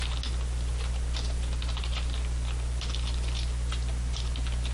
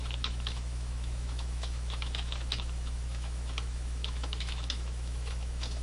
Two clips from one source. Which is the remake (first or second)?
second